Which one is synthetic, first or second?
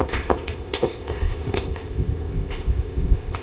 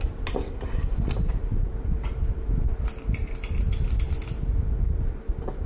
first